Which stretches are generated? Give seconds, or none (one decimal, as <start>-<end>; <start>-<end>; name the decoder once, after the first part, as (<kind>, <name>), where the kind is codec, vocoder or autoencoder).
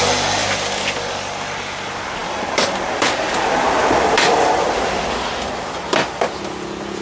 2.2-6.4 (vocoder, BigVGAN v2)